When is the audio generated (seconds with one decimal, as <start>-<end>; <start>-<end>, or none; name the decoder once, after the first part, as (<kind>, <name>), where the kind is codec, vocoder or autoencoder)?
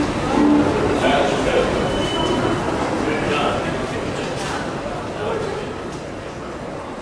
none